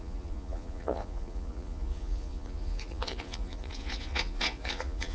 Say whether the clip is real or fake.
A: fake